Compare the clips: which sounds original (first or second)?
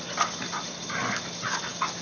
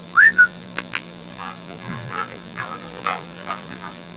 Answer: first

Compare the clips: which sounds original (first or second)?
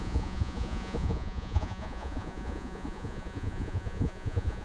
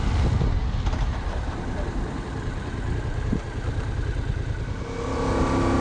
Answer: second